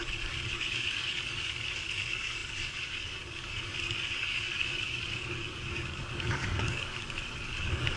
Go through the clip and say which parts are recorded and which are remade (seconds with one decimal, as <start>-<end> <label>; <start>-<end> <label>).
0.0-8.0 remade